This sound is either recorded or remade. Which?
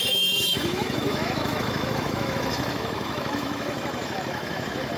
remade